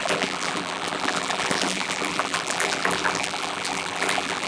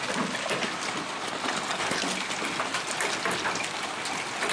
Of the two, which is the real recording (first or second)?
second